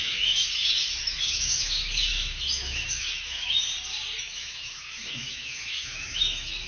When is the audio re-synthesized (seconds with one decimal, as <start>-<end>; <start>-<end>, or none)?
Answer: 0.0-3.7; 4.2-6.7